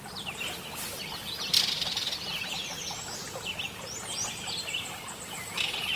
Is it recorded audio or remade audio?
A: recorded